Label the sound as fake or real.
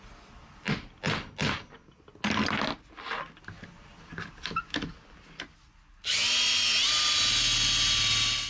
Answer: real